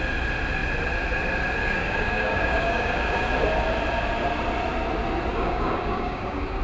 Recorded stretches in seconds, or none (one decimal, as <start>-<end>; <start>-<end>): 0.0-1.6; 3.2-5.3